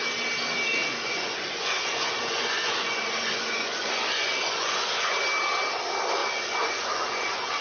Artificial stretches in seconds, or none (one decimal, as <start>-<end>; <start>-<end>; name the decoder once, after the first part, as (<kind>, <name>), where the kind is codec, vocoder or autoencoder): 0.8-5.2 (vocoder, Vocos); 6.2-7.6